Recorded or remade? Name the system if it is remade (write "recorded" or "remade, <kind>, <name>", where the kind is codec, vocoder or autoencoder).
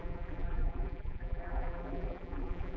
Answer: remade, vocoder, BigVGAN v2